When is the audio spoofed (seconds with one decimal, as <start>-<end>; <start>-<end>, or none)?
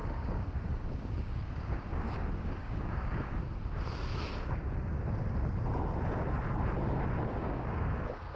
0.0-3.4; 4.3-5.0; 7.4-8.4